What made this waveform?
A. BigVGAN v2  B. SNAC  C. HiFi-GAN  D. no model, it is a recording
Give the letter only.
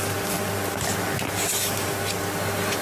D